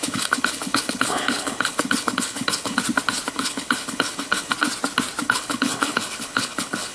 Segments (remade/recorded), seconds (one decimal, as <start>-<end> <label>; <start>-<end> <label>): 0.0-2.8 remade; 2.8-3.3 recorded; 3.3-4.5 remade; 4.5-5.2 recorded; 5.2-6.9 remade